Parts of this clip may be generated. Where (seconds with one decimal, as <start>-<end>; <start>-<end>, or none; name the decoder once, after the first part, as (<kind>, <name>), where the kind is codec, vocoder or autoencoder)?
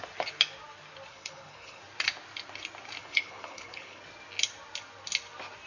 1.1-1.8 (codec, HILCodec); 3.0-4.0